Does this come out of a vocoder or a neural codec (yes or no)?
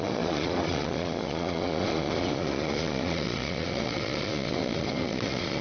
yes